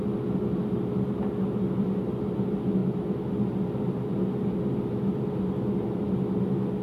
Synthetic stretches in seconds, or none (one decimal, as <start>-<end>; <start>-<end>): 2.8-3.3